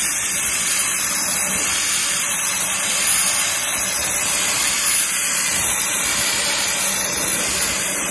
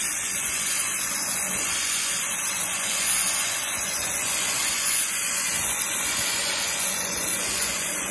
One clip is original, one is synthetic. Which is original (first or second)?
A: first